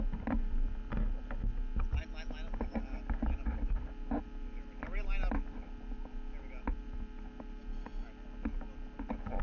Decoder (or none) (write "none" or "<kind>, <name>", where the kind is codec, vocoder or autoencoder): none